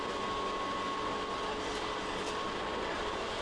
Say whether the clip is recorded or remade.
recorded